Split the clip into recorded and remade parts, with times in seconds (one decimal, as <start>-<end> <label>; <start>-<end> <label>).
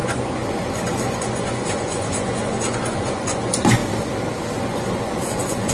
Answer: 0.0-3.8 remade; 3.8-4.6 recorded; 4.6-5.7 remade